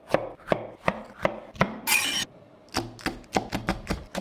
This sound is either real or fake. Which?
real